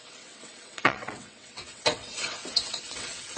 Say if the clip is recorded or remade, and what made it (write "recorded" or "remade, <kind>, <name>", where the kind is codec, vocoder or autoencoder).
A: remade, vocoder, WaveNeXt